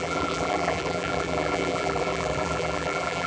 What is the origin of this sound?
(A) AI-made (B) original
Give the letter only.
A